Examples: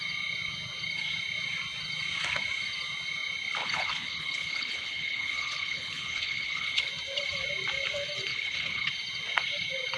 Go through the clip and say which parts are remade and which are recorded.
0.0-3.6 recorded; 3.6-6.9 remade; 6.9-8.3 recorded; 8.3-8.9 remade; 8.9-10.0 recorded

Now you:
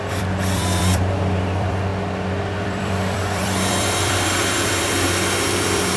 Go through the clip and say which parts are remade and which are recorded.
0.0-1.9 remade; 1.9-2.6 recorded; 2.6-6.0 remade